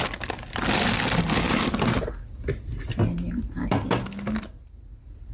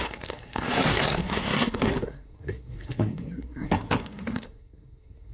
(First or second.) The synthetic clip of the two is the second